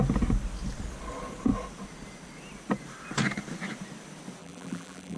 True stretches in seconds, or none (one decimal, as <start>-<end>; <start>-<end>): 0.0-4.4